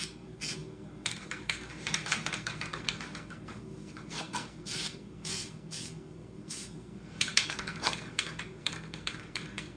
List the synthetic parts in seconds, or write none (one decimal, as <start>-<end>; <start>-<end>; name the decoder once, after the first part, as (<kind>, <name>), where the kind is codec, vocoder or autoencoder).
0.0-9.8 (codec, SNAC)